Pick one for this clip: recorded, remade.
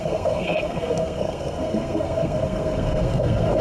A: remade